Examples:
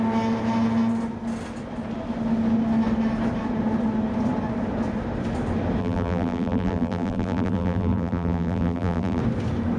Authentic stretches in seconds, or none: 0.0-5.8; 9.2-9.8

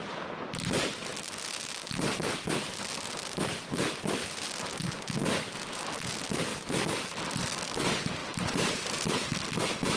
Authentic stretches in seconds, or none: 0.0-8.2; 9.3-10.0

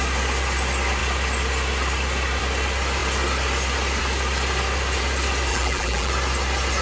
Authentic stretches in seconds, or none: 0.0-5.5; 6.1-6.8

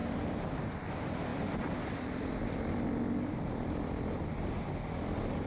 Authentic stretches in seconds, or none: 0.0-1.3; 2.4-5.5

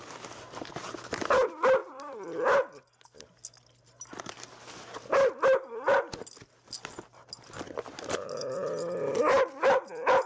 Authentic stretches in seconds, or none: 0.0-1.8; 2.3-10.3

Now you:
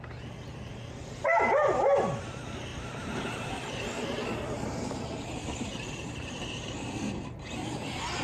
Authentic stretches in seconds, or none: 0.0-0.7; 2.1-2.7; 6.7-8.2